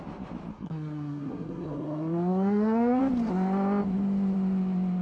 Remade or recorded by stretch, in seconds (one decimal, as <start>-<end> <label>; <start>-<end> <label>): 0.0-0.5 recorded; 0.5-3.0 remade; 3.0-5.0 recorded